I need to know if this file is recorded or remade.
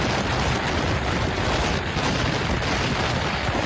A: recorded